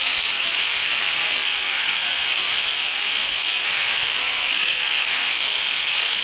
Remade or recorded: remade